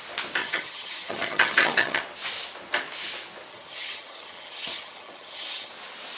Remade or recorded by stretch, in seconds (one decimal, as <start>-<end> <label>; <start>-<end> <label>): 0.0-0.4 recorded; 0.4-2.0 remade; 2.0-3.5 recorded; 3.5-5.7 remade; 5.7-6.2 recorded